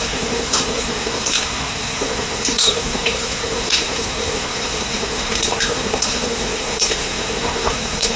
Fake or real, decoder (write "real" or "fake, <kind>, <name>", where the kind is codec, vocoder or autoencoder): fake, codec, SNAC